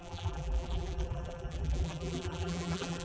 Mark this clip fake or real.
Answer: fake